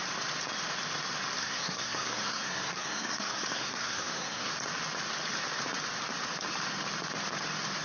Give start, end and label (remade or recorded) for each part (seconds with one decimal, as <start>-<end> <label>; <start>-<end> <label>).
0.0-1.4 recorded; 1.4-4.5 remade; 4.5-7.8 recorded